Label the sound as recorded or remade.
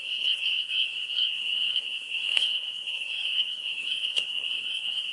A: remade